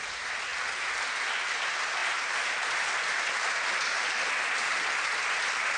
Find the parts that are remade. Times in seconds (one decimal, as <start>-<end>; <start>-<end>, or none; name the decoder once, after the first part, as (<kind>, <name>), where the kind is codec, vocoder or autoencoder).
2.0-3.3 (vocoder, BigVGAN v2)